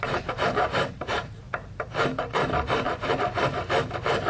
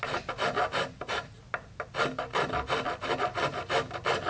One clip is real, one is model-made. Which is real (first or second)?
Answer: second